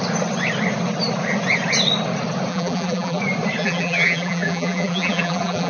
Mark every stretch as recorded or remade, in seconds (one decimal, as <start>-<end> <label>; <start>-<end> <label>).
0.0-2.5 recorded; 2.5-3.2 remade; 3.2-3.6 recorded; 3.6-5.7 remade